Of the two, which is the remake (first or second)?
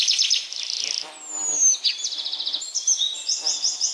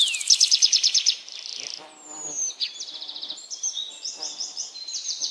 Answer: second